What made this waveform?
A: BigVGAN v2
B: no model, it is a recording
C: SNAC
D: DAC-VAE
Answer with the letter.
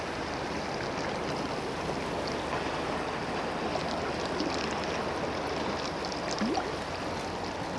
B